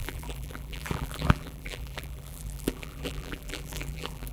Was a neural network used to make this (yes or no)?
yes